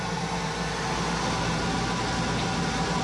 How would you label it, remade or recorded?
recorded